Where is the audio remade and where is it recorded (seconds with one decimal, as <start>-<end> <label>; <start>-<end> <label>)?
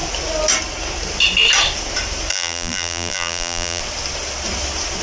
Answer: 0.0-2.3 recorded; 2.3-3.8 remade; 3.8-5.0 recorded